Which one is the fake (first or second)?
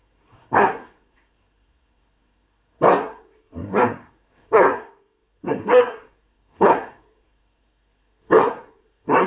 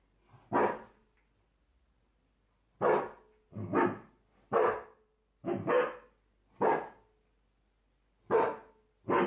first